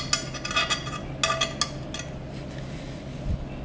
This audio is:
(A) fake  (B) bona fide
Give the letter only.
B